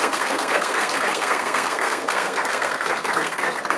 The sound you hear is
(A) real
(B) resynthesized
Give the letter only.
B